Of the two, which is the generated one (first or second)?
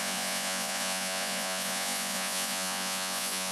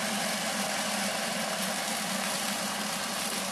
first